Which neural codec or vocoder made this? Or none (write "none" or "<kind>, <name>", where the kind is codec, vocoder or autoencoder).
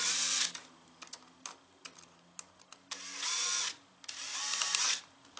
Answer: none